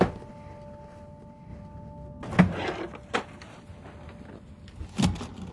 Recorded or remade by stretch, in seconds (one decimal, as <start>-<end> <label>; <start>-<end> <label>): 0.0-5.5 recorded